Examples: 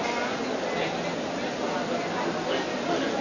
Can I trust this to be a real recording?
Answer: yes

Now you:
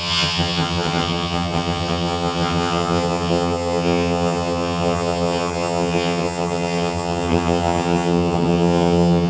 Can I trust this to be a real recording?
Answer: no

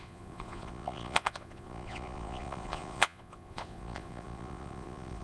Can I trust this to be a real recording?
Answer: no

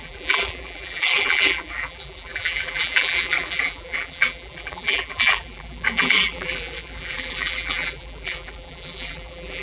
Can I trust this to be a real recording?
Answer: no